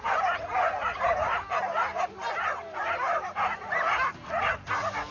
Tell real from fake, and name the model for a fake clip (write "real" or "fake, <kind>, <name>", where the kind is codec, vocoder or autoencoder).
real